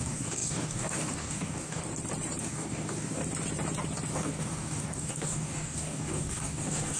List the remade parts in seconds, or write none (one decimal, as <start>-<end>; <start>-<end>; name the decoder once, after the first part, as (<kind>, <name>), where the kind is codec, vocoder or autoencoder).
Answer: 0.0-1.8 (codec, DAC); 2.4-3.2; 4.1-7.0